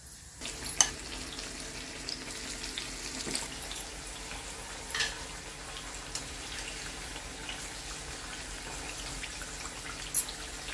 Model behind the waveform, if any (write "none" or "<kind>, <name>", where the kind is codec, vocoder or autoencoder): none